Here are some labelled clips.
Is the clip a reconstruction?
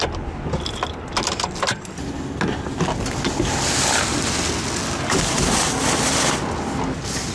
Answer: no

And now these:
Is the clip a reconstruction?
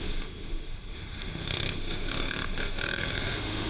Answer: yes